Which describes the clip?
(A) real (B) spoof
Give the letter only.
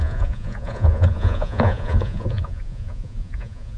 B